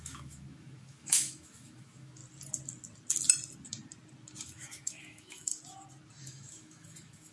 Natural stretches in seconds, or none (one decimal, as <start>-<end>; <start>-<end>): 2.2-4.4; 5.5-6.2